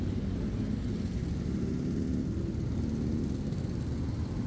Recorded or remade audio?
recorded